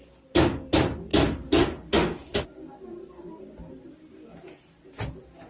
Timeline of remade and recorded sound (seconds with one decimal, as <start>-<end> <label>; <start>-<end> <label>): 0.0-5.5 recorded